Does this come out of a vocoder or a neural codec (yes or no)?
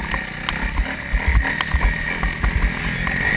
no